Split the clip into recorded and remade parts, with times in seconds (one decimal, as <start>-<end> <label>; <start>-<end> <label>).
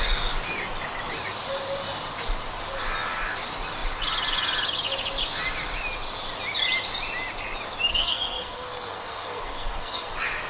0.0-7.9 recorded; 7.9-10.1 remade; 10.1-10.5 recorded